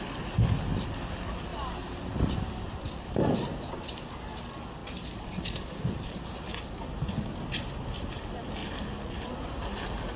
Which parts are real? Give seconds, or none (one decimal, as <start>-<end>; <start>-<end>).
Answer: 0.0-1.5; 4.1-4.8; 6.3-10.2